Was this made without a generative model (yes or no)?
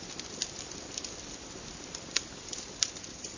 yes